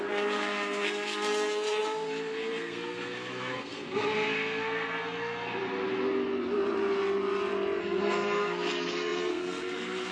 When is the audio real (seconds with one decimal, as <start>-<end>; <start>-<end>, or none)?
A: 5.5-7.8

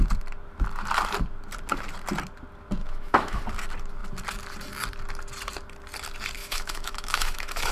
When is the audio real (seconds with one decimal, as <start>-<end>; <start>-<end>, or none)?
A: 0.0-2.8; 3.4-6.4

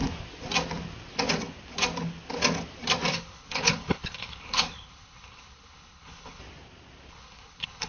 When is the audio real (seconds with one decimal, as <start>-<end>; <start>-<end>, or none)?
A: 0.0-3.1; 6.4-7.1

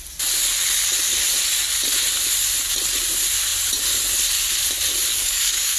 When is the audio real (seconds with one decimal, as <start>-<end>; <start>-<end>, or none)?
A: 0.0-5.1

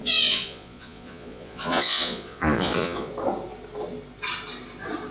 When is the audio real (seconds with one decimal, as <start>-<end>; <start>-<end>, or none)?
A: 3.1-5.1

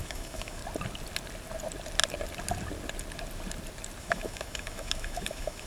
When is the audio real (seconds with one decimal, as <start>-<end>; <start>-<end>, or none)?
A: 0.6-4.0

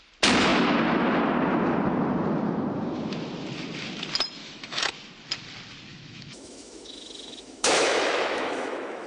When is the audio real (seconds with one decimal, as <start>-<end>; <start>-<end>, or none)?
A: 0.0-4.4; 4.9-5.9

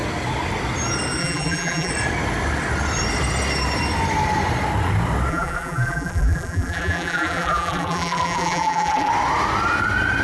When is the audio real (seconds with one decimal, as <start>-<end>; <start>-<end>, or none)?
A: 0.0-1.2; 1.9-5.3; 9.1-10.2